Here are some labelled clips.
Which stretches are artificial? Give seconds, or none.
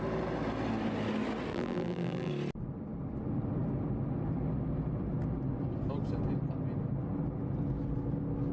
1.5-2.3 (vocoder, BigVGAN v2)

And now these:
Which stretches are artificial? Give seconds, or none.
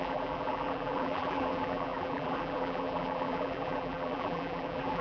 0.0-5.0 (vocoder, BigVGAN v2)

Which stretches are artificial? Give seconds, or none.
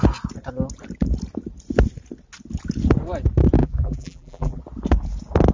3.6-4.6 (vocoder, BigVGAN v2)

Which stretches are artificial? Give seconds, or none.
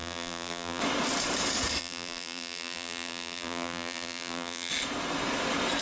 0.0-0.8 (vocoder, BigVGAN v2); 1.8-4.7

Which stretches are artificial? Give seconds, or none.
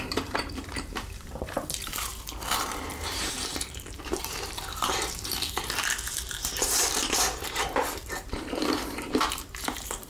0.0-2.1 (vocoder, BigVGAN v2); 2.6-10.1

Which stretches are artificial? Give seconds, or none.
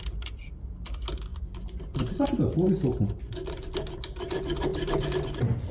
1.3-3.3 (vocoder, BigVGAN v2); 4.7-5.3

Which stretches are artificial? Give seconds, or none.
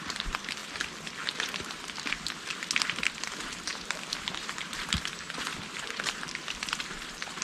0.0-0.6 (vocoder, BigVGAN v2); 1.7-7.4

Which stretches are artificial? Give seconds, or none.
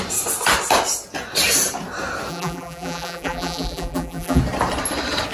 2.3-4.4 (vocoder, BigVGAN v2)